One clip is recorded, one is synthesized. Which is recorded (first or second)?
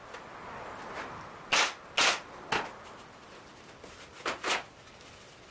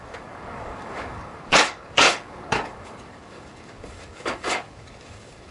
first